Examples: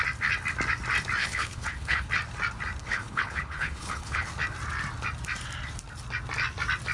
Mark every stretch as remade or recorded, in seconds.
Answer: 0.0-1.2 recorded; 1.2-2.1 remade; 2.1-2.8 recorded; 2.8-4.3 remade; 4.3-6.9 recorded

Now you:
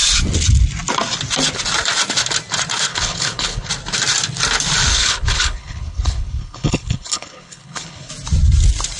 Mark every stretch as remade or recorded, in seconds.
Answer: 0.0-2.9 recorded; 2.9-3.7 remade; 3.7-4.9 recorded; 4.9-8.1 remade; 8.1-9.0 recorded

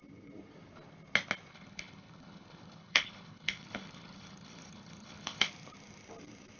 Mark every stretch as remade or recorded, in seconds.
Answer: 0.0-1.5 recorded; 1.5-5.5 remade; 5.5-6.6 recorded

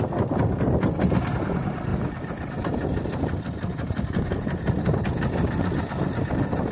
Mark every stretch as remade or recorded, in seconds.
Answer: 0.0-6.7 recorded